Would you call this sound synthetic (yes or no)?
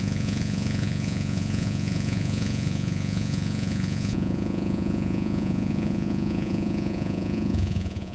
yes